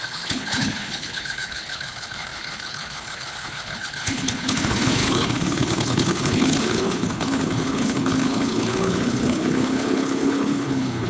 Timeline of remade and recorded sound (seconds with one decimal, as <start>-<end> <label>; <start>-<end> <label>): 0.0-11.1 remade